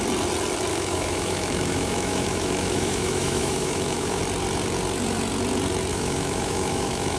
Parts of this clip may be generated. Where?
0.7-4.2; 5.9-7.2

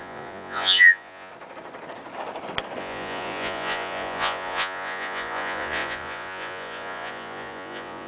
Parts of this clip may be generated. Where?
0.0-1.3; 2.8-8.1

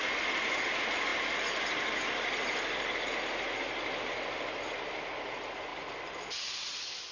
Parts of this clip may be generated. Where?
5.7-7.1

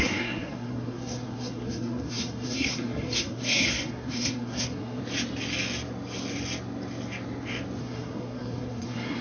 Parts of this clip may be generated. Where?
0.0-5.0; 7.8-9.2

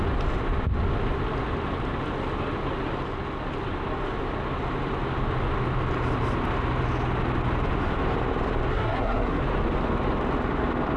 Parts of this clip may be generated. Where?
8.7-9.4

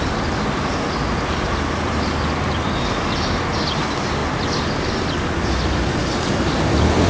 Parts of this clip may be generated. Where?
6.0-7.1

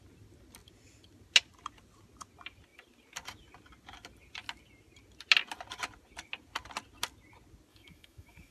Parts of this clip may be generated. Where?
7.7-8.5

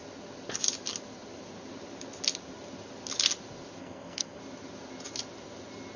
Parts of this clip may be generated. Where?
3.8-4.4